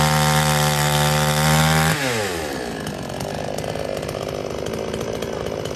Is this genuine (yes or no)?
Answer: yes